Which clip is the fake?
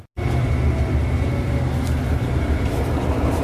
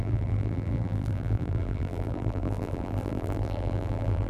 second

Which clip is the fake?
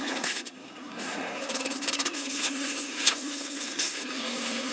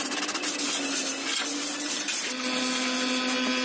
first